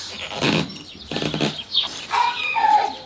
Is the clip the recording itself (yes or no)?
yes